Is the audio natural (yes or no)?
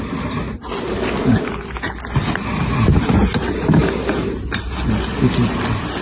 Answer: yes